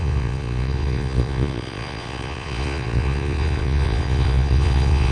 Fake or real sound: fake